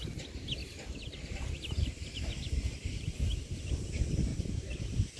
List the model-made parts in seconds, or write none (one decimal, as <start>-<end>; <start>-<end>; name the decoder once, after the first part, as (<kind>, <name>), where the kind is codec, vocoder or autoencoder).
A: 0.6-3.7 (vocoder, BigVGAN v2); 4.3-4.8